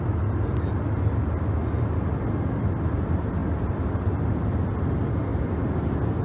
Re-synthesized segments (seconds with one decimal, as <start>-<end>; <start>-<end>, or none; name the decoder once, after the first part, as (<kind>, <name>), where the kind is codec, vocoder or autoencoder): none